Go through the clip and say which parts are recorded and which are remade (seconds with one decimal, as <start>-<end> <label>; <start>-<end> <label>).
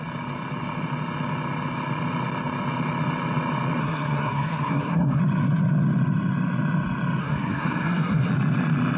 0.0-3.8 recorded; 3.8-5.2 remade; 5.2-7.2 recorded; 7.2-8.3 remade; 8.3-9.0 recorded